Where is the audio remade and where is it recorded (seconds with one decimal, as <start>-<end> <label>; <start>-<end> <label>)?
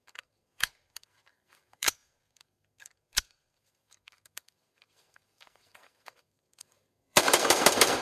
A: 0.0-8.0 remade